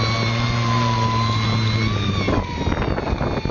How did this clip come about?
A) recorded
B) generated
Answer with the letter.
A